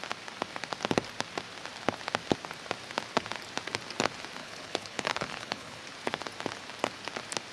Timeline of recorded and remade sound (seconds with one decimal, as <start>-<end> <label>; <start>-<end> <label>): 0.0-4.4 recorded; 4.4-5.8 remade; 5.8-7.5 recorded